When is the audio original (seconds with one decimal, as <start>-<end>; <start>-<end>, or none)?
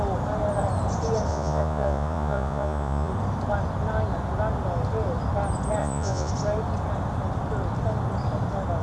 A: 0.0-1.3; 3.1-5.8; 6.3-8.8